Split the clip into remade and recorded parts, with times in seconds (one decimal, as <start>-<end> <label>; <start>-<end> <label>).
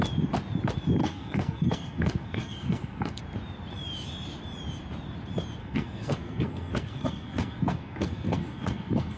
0.0-1.0 recorded; 1.0-3.2 remade; 3.2-5.6 recorded; 5.6-9.2 remade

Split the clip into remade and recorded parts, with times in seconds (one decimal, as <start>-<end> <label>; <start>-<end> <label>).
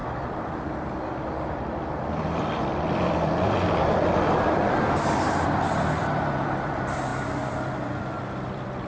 0.0-8.9 remade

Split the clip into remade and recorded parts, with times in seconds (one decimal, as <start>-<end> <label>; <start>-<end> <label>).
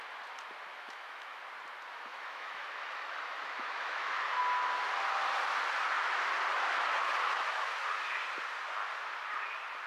0.0-0.7 recorded; 0.7-1.4 remade; 1.4-2.1 recorded; 2.1-4.4 remade; 4.4-7.3 recorded; 7.3-7.8 remade; 7.8-9.9 recorded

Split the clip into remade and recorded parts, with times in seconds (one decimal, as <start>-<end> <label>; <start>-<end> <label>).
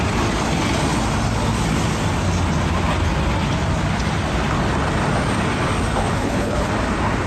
0.0-6.1 recorded; 6.1-6.7 remade; 6.7-7.3 recorded